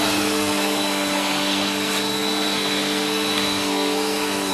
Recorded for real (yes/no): no